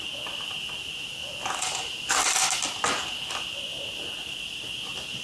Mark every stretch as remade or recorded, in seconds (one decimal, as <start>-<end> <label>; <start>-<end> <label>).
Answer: 0.0-5.2 recorded

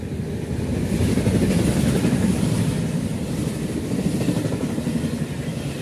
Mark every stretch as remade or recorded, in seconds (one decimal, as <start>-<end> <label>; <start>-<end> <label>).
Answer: 0.0-1.0 recorded; 1.0-4.5 remade; 4.5-5.8 recorded

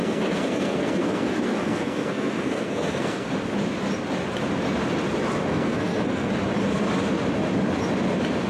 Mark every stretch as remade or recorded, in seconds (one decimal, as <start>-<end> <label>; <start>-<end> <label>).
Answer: 0.0-3.3 remade; 3.3-5.5 recorded; 5.5-6.3 remade; 6.3-8.5 recorded

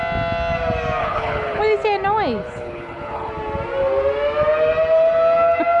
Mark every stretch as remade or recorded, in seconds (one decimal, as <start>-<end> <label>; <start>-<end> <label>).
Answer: 0.0-1.0 recorded; 1.0-1.6 remade; 1.6-2.4 recorded; 2.4-3.3 remade; 3.3-5.8 recorded

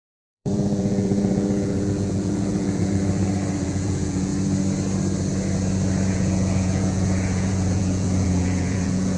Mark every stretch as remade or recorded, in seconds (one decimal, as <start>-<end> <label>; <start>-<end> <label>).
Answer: 0.0-3.0 remade; 3.0-3.6 recorded; 3.6-4.3 remade; 4.3-6.1 recorded; 6.1-9.2 remade

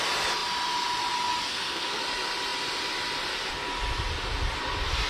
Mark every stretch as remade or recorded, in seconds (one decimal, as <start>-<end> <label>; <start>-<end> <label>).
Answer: 0.0-1.5 recorded; 1.5-2.0 remade; 2.0-5.1 recorded